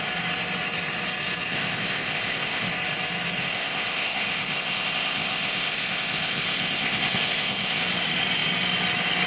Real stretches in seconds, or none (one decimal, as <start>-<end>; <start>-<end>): 0.0-1.5; 2.7-3.4; 7.8-9.3

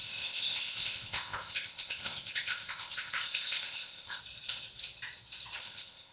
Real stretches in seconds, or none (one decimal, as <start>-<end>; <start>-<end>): 4.2-5.6

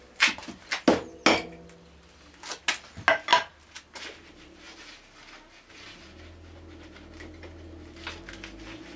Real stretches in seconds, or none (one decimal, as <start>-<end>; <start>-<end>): 0.0-9.0